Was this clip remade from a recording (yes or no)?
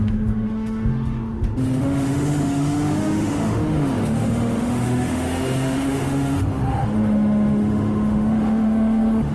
yes